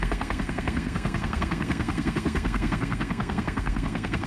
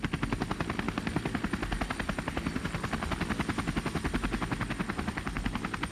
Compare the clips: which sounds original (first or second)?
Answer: second